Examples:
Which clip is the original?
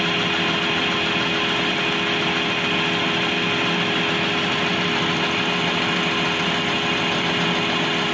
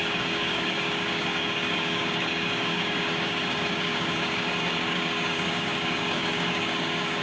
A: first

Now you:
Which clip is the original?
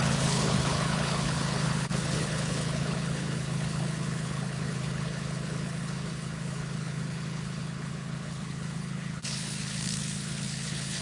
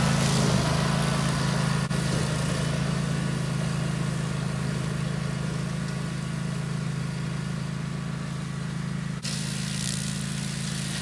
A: second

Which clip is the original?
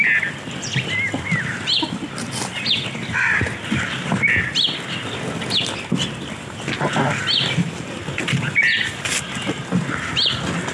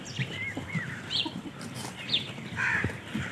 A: first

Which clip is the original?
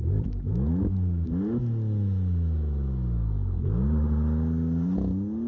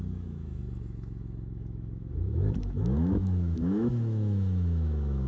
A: first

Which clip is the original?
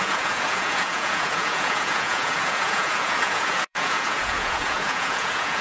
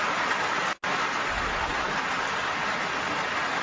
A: second